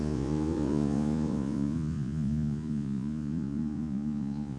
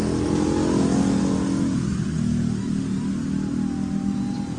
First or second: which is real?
second